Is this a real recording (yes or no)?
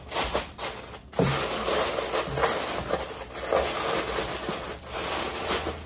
yes